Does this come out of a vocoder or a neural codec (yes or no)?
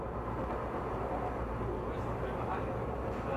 no